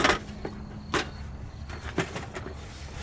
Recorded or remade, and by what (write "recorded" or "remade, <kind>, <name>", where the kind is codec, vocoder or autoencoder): recorded